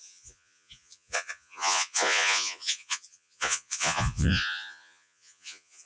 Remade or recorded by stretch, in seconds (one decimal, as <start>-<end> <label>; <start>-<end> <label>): 0.0-5.9 remade